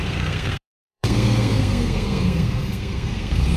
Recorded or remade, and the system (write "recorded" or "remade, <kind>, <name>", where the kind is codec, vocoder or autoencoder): remade, codec, SNAC